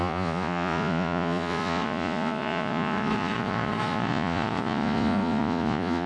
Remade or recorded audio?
remade